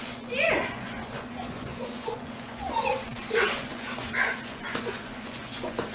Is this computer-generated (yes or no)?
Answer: yes